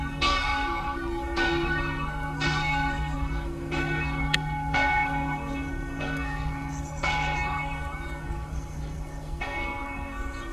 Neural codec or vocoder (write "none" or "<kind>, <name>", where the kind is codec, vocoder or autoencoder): codec, SNAC